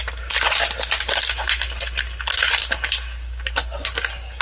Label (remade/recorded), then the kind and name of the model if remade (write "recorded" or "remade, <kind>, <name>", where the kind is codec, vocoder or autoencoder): recorded